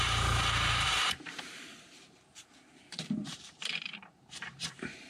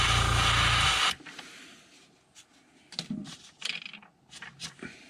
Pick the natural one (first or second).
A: second